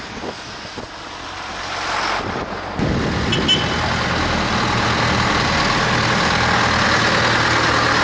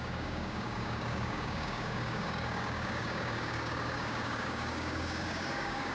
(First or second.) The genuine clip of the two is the first